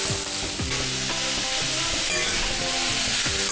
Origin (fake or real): real